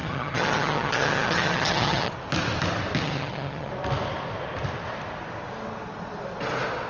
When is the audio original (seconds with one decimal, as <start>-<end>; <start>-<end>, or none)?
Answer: 2.1-3.0; 3.7-6.9